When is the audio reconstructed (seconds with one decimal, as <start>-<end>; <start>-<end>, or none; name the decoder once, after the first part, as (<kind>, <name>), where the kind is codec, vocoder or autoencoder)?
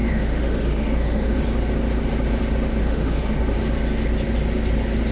0.0-1.4 (autoencoder, DAC-VAE); 2.8-3.4